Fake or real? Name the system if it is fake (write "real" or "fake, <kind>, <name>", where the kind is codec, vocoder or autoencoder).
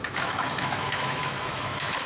fake, autoencoder, DAC-VAE